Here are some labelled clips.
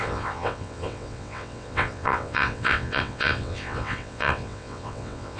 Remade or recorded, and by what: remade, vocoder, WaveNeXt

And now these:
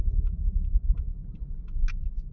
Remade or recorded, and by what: recorded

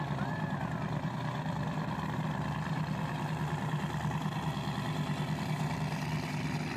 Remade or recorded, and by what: recorded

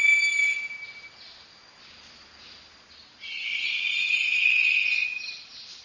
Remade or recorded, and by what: recorded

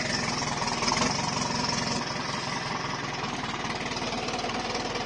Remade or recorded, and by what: recorded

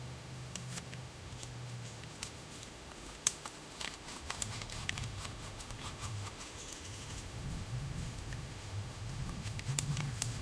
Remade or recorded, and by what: remade, autoencoder, DAC-VAE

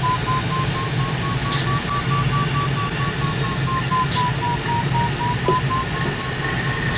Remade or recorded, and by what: recorded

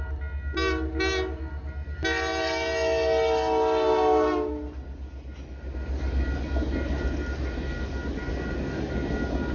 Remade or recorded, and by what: recorded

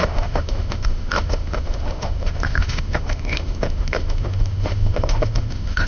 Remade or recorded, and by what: remade, autoencoder, DAC-VAE